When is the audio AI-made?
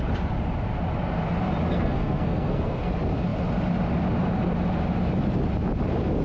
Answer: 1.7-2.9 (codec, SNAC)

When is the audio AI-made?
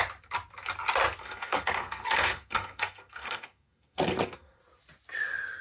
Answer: 1.2-4.6 (codec, SNAC)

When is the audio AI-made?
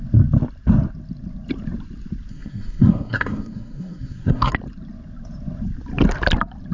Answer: 2.3-4.5 (codec, SNAC)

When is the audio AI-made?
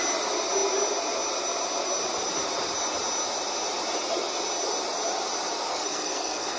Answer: 5.7-6.6 (codec, SNAC)